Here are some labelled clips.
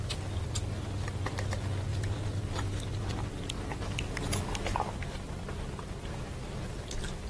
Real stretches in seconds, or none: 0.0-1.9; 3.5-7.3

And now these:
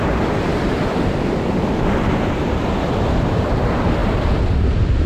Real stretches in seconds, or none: 0.0-0.5; 3.6-5.1